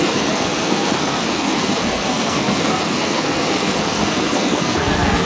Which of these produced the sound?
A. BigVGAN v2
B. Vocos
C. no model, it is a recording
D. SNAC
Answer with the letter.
D